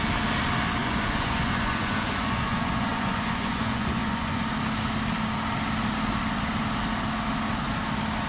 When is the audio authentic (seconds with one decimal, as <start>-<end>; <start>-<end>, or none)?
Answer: 0.0-0.8; 4.4-8.3